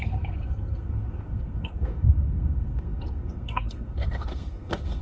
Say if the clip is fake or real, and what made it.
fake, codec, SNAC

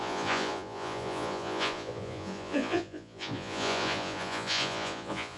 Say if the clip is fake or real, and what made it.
fake, vocoder, Vocos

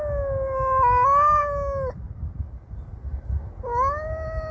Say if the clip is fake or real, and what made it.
real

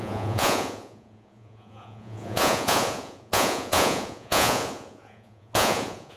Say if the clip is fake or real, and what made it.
fake, vocoder, Vocos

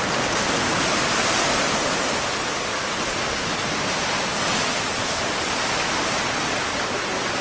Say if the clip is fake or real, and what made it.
real